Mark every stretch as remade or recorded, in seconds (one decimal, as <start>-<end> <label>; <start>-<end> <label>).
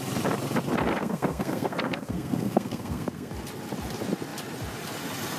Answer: 0.0-0.9 recorded; 0.9-3.3 remade; 3.3-5.4 recorded